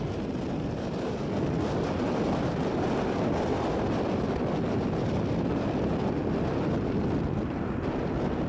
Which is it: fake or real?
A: real